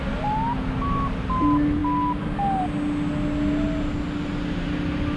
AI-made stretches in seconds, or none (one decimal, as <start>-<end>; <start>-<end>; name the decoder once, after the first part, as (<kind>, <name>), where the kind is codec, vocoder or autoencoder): none